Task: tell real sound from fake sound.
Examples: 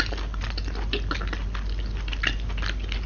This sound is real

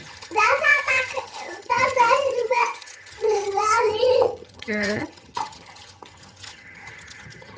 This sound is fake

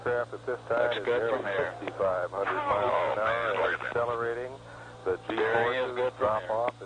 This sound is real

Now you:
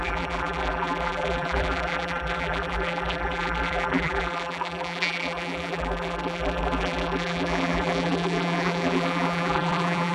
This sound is fake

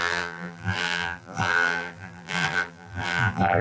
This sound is fake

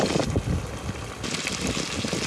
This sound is real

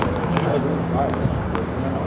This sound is fake